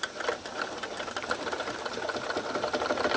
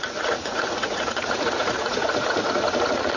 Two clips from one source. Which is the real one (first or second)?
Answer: first